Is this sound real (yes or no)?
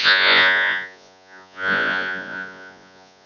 no